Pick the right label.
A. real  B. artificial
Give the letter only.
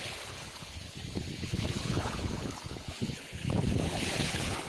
B